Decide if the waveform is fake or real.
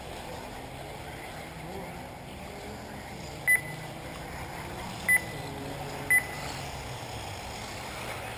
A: real